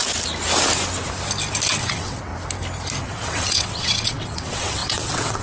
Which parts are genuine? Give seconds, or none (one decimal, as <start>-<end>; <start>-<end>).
0.0-1.8; 2.3-3.0